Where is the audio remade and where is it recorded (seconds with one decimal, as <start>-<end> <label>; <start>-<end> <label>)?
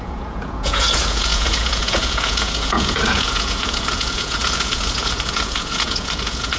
0.0-6.6 remade